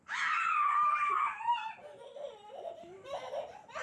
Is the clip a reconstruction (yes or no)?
yes